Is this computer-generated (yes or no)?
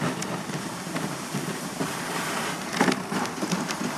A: no